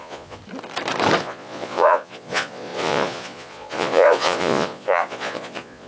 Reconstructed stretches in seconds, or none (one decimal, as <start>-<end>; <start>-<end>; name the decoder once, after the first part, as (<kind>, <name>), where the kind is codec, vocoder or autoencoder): 0.0-0.4 (vocoder, Vocos); 1.2-5.9